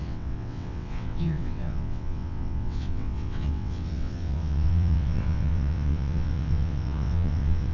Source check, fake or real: fake